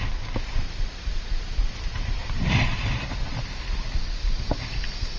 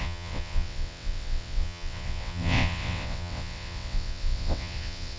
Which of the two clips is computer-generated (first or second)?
second